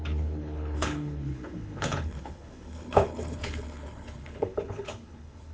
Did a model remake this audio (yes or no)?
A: yes